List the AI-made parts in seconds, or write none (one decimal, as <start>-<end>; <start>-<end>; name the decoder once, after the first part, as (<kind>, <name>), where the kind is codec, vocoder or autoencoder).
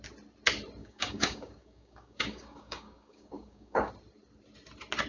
0.8-3.9 (codec, DAC)